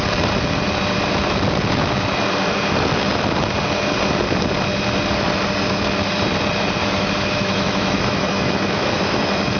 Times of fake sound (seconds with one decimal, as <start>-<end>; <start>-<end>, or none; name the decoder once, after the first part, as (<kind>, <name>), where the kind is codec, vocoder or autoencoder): 6.8-9.2 (autoencoder, DAC-VAE)